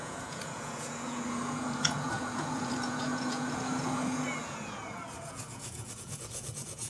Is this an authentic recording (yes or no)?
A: no